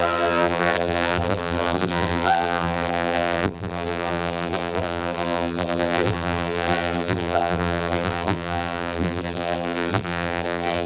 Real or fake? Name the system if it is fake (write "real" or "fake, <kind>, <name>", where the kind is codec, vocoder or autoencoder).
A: fake, vocoder, BigVGAN v2